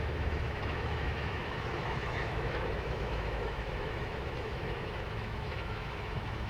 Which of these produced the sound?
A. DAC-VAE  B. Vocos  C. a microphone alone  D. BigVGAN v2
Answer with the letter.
A